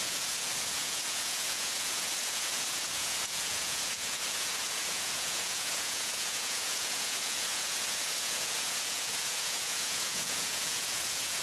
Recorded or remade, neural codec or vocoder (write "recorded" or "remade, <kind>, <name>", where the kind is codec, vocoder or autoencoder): remade, vocoder, Vocos